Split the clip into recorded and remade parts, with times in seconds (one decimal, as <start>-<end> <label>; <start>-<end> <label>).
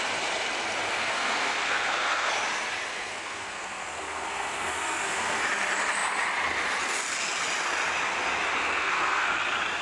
0.0-1.0 recorded; 1.0-2.3 remade; 2.3-2.9 recorded; 2.9-5.4 remade; 5.4-8.6 recorded; 8.6-9.4 remade; 9.4-9.8 recorded